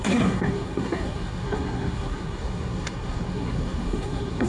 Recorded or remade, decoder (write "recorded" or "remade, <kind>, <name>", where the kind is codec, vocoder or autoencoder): remade, codec, SNAC